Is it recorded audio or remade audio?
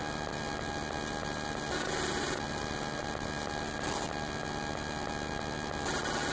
recorded